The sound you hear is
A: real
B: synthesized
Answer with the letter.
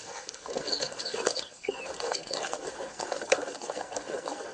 B